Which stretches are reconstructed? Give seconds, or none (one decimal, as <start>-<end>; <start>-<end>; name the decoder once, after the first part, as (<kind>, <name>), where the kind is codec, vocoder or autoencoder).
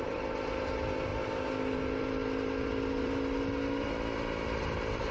none